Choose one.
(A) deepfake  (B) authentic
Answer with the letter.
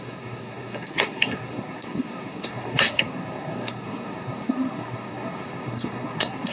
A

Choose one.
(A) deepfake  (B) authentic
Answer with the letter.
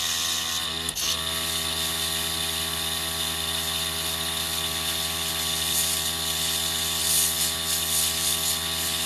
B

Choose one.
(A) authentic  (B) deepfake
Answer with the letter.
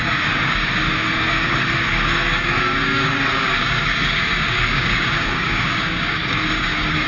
B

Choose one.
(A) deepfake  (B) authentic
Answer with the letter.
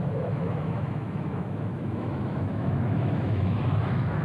A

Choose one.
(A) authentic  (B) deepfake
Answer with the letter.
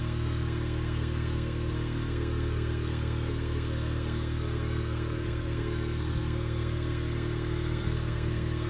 B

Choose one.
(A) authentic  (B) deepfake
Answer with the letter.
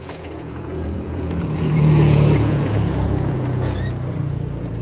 B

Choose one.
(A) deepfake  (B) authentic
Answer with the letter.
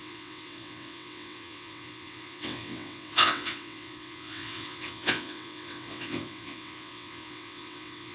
A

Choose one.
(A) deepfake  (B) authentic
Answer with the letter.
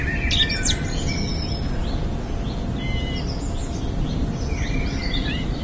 B